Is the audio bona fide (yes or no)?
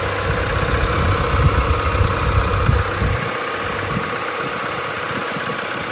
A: yes